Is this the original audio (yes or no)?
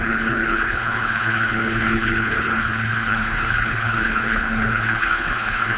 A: no